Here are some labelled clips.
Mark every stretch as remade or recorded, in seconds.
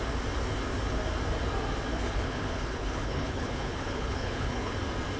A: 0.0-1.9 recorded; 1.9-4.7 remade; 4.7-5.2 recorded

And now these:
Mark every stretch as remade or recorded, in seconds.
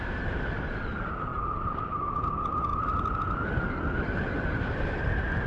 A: 0.0-5.5 recorded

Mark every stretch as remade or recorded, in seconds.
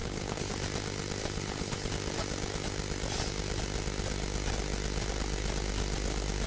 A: 0.0-0.5 remade; 0.5-1.2 recorded; 1.2-1.9 remade; 1.9-6.5 recorded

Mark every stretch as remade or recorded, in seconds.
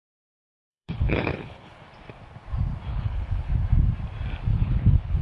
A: 0.0-0.7 recorded; 0.7-1.8 remade; 1.8-2.9 recorded; 2.9-3.5 remade; 3.5-4.5 recorded; 4.5-5.2 remade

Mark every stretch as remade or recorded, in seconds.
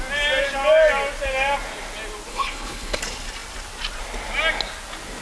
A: 0.0-2.3 recorded; 2.3-3.0 remade; 3.0-5.2 recorded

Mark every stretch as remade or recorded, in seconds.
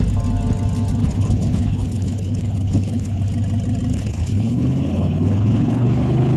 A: 0.0-1.0 recorded; 1.0-3.2 remade; 3.2-3.9 recorded; 3.9-6.4 remade